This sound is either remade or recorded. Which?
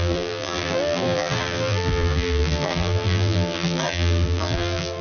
remade